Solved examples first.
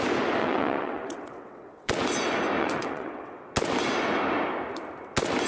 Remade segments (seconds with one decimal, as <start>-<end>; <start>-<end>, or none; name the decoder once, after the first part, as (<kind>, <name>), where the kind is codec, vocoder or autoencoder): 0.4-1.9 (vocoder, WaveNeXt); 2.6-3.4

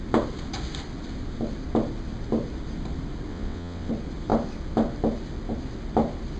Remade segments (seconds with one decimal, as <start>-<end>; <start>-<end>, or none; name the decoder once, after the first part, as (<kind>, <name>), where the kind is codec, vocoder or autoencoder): 3.3-3.9 (vocoder, WaveNeXt)

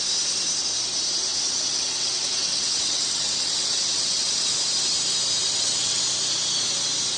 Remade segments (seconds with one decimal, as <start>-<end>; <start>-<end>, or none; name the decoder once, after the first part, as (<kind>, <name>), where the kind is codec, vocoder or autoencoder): 1.3-4.5 (vocoder, WaveNeXt); 5.4-6.0